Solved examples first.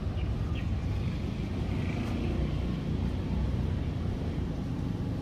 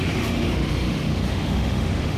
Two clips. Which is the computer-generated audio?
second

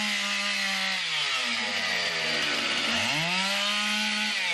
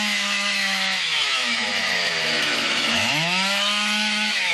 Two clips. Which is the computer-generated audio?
second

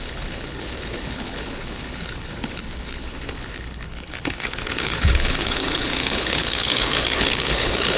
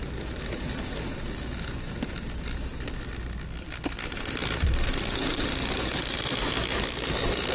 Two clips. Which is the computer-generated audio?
first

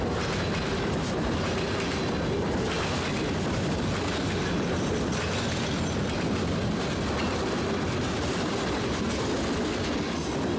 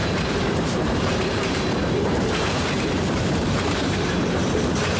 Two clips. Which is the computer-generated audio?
second